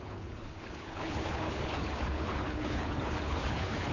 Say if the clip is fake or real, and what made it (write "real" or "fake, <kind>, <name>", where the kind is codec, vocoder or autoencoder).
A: fake, codec, HILCodec